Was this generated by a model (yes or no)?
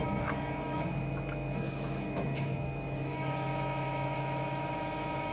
yes